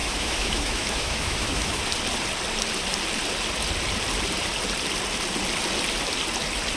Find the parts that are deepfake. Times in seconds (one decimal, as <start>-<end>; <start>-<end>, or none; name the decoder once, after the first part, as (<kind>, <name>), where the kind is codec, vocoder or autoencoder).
0.0-1.8 (autoencoder, DAC-VAE)